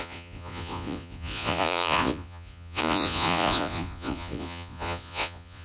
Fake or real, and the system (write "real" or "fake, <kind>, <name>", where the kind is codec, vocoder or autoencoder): fake, vocoder, Vocos